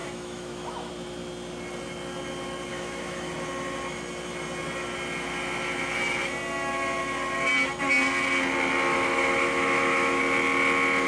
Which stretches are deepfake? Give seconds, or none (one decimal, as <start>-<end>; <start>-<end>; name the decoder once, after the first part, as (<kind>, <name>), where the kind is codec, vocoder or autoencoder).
0.0-0.9 (autoencoder, DAC-VAE); 2.7-3.3; 8.9-10.2